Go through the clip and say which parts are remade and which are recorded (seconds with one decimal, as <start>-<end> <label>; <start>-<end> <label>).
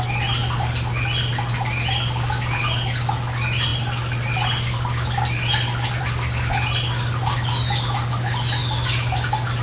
0.0-9.6 recorded